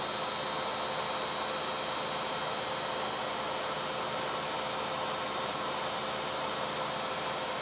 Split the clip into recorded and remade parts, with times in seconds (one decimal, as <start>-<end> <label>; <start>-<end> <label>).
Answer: 0.0-7.6 recorded